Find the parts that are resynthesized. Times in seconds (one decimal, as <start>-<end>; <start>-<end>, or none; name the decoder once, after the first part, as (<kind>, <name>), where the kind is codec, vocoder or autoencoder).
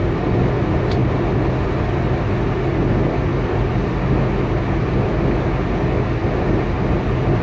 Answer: 3.3-4.1 (vocoder, BigVGAN v2)